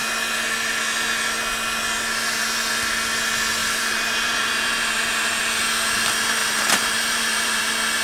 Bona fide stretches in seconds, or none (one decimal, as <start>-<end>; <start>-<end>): 0.0-3.6; 5.4-6.4; 7.6-8.0

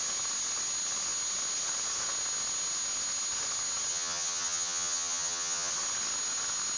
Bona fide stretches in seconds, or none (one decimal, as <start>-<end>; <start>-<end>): 0.0-3.9; 5.7-6.8

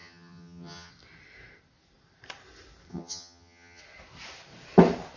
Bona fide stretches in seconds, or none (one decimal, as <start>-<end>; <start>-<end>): 0.9-2.9; 3.8-5.2

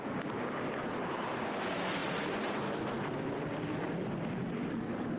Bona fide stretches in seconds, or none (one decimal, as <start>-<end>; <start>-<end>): 0.0-5.2

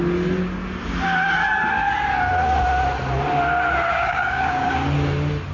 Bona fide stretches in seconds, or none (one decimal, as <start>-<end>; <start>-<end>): 0.0-3.9; 4.7-5.5

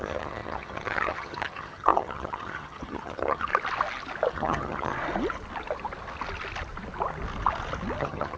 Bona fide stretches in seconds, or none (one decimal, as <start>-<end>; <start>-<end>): 3.5-4.3; 4.9-8.0

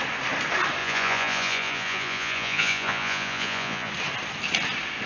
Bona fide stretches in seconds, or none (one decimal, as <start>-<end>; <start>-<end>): 0.0-0.8; 3.9-5.1